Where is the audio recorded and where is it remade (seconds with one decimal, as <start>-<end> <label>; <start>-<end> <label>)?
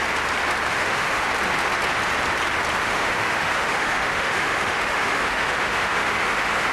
0.0-0.7 recorded; 0.7-1.3 remade; 1.3-2.8 recorded; 2.8-6.7 remade